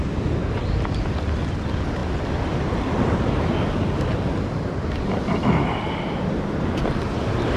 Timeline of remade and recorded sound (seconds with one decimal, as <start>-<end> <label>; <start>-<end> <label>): 0.0-7.6 recorded